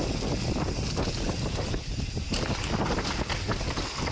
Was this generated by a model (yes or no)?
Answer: no